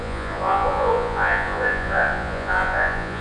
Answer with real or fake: fake